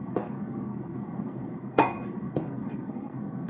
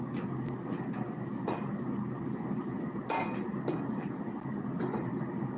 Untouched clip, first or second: second